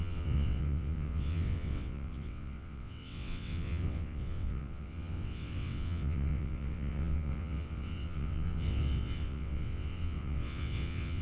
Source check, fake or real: fake